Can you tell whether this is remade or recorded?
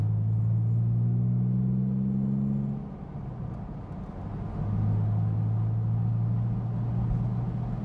recorded